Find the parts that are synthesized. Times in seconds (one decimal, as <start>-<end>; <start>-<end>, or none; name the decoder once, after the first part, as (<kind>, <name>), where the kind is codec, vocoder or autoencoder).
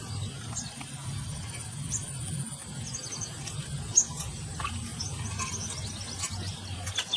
none